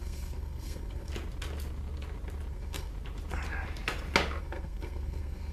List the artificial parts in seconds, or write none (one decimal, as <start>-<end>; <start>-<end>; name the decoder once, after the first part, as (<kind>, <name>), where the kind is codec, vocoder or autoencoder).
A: 0.0-1.1 (codec, SNAC); 2.5-2.9; 4.4-5.5